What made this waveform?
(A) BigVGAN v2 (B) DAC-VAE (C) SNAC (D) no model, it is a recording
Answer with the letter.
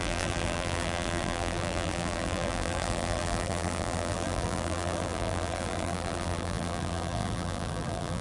A